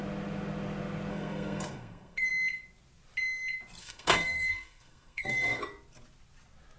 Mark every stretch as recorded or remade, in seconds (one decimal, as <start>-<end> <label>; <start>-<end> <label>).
0.0-1.1 recorded; 1.1-2.3 remade; 2.3-3.8 recorded; 3.8-5.6 remade; 5.6-6.8 recorded